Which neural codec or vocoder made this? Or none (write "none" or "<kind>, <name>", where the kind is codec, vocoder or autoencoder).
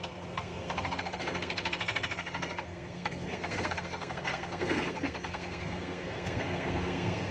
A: codec, SNAC